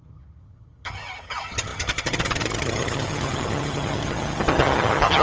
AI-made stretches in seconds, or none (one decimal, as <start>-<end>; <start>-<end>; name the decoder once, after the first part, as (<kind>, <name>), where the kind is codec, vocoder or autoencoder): 0.0-5.2 (vocoder, HiFi-GAN)